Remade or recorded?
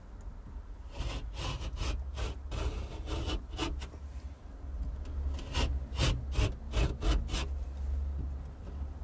recorded